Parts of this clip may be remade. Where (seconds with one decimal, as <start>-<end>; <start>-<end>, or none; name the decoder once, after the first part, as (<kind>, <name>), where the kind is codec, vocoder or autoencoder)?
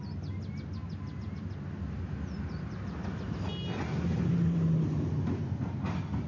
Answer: none